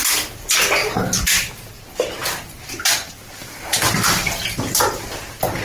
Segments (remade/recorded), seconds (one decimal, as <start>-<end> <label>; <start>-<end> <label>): 0.0-5.6 recorded

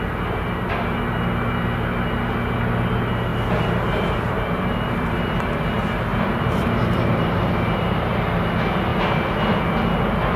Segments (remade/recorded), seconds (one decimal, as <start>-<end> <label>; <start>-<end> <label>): 0.0-3.3 recorded; 3.3-5.6 remade; 5.6-6.1 recorded; 6.1-7.5 remade; 7.5-10.4 recorded

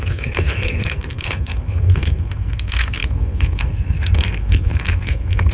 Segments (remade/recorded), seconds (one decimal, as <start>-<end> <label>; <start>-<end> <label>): 0.0-5.5 remade

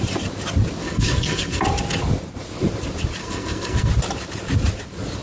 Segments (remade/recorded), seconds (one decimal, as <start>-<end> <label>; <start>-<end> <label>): 0.0-0.8 recorded; 0.8-1.6 remade; 1.6-3.2 recorded; 3.2-3.9 remade; 3.9-5.2 recorded

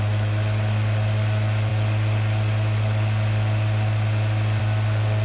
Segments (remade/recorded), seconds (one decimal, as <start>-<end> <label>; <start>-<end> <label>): 0.0-5.2 recorded

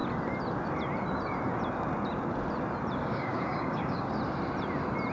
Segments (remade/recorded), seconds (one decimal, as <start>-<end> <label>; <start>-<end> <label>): 0.0-3.0 recorded; 3.0-4.1 remade; 4.1-5.1 recorded